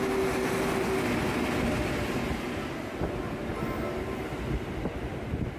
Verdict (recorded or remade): recorded